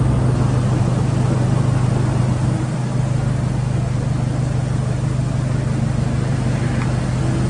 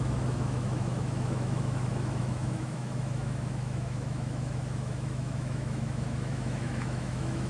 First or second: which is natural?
first